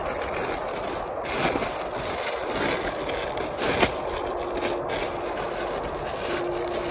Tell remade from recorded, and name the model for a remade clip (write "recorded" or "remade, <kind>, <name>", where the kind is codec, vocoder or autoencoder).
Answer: recorded